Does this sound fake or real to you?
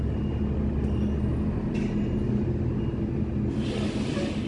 real